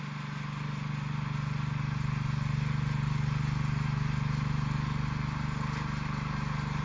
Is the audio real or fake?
real